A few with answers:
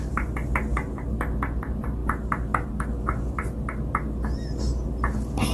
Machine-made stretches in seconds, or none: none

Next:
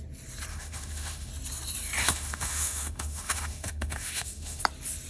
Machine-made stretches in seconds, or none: 0.5-1.3 (autoencoder, DAC-VAE); 2.0-4.6

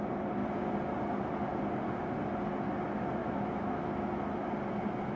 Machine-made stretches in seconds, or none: 3.2-4.5 (autoencoder, DAC-VAE)

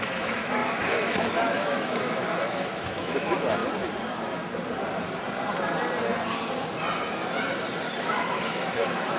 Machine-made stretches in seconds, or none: 0.0-3.6 (autoencoder, DAC-VAE); 8.0-9.2

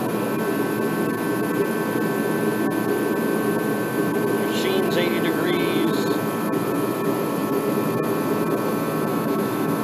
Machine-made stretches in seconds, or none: 9.1-9.8 (autoencoder, DAC-VAE)